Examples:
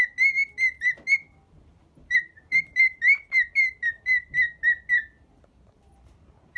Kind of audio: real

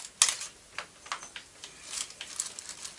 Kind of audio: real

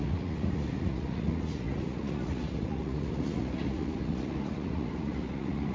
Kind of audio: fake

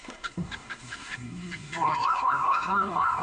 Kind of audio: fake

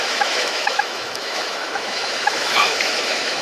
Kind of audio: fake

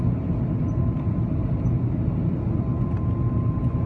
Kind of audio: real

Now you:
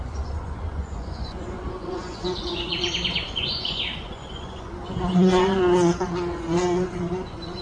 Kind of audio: fake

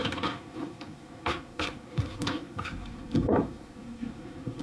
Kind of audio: fake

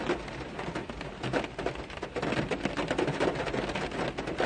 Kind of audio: real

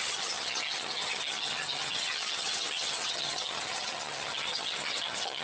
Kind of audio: fake